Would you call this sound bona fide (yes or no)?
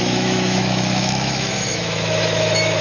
no